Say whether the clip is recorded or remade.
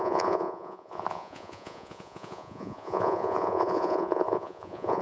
remade